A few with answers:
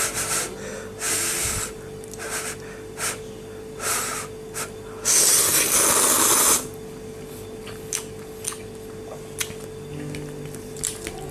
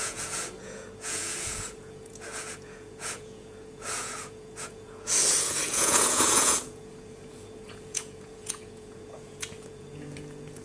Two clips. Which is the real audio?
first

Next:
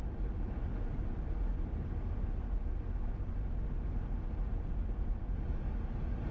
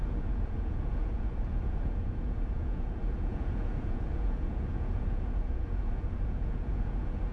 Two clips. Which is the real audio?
first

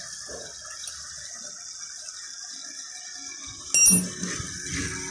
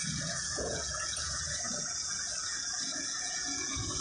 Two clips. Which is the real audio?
first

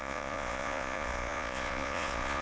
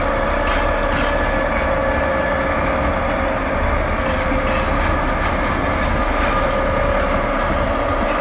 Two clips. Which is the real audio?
second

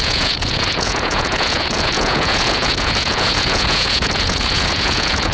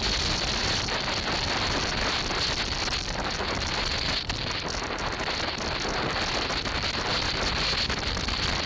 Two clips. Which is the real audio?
second